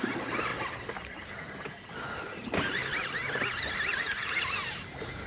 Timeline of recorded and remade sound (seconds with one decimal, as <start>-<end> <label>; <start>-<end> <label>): 0.0-5.3 recorded